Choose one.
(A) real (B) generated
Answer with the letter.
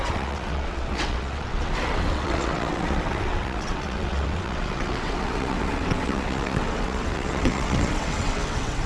B